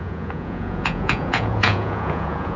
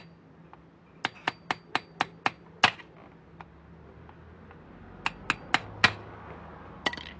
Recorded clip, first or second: second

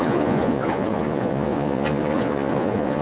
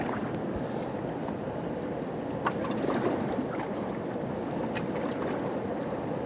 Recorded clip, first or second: second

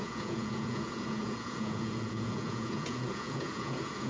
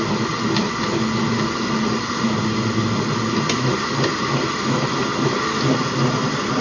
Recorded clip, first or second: second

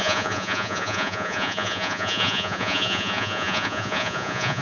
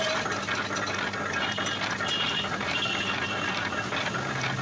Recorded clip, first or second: second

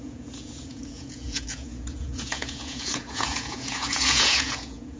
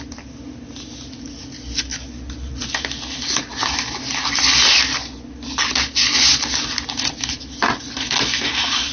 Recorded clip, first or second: second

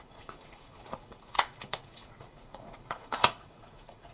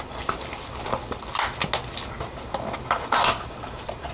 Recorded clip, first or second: second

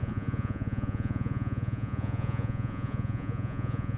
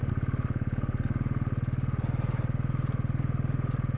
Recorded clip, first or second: second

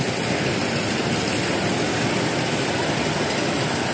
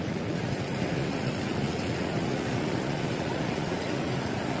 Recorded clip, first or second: first